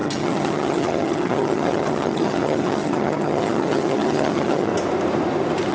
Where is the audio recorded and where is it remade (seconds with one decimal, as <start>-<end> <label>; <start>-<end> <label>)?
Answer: 0.0-4.7 remade; 4.7-5.7 recorded